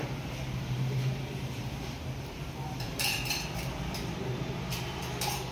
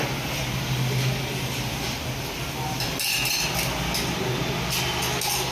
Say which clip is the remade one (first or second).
first